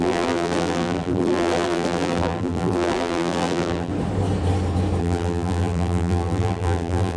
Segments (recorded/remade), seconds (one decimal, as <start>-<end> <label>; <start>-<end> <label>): 0.0-3.9 remade; 3.9-5.0 recorded; 5.0-7.2 remade